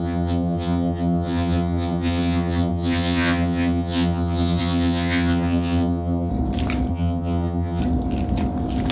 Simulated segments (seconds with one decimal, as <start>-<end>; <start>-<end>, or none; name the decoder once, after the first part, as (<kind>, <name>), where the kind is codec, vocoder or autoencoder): 0.0-6.3 (vocoder, HiFi-GAN); 6.9-7.8